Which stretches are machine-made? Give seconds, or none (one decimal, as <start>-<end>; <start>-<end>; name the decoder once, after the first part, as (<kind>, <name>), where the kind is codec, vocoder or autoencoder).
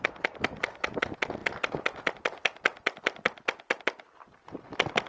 none